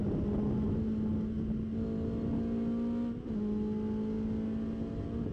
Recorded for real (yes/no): yes